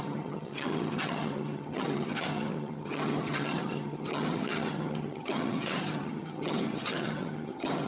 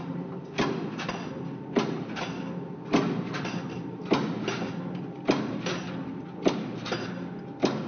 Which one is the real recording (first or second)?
second